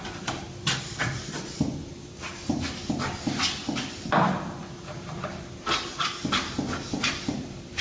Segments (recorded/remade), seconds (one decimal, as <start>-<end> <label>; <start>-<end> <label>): 0.0-2.8 remade; 2.8-7.3 recorded; 7.3-7.8 remade